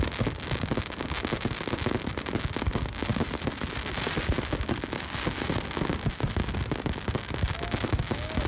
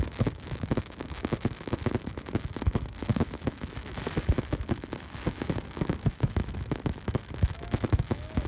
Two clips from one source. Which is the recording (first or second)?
first